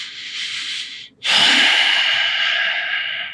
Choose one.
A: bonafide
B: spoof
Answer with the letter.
A